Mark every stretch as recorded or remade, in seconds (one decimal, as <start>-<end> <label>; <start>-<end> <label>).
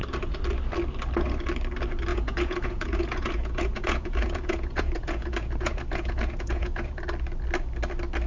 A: 0.0-2.1 recorded; 2.1-7.0 remade; 7.0-8.3 recorded